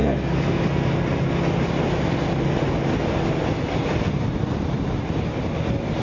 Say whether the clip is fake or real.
real